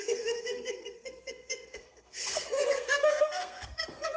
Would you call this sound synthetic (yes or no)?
yes